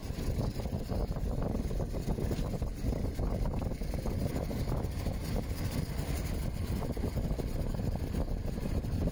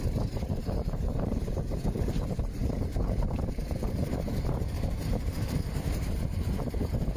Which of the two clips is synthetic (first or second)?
second